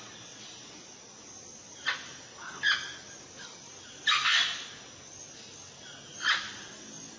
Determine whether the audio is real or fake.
real